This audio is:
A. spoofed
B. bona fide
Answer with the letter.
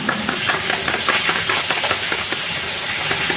B